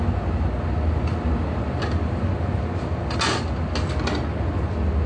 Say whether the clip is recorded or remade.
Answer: recorded